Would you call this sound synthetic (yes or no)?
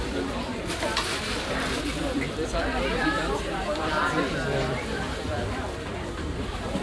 yes